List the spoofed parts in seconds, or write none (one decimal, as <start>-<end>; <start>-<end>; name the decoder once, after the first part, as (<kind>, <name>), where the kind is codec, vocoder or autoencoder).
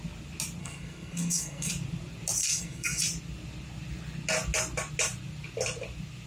0.6-1.7 (codec, SNAC); 2.4-3.0